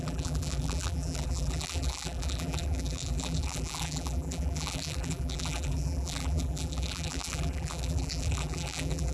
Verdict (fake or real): fake